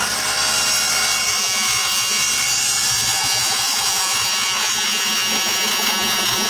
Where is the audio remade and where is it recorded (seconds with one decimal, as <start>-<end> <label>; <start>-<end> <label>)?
0.0-1.3 recorded; 1.3-2.2 remade; 2.2-2.9 recorded; 2.9-6.5 remade